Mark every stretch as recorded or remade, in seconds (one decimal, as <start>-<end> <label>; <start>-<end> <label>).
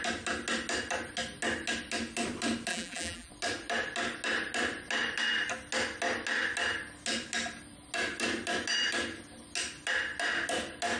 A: 0.0-2.7 recorded; 2.7-3.3 remade; 3.3-11.0 recorded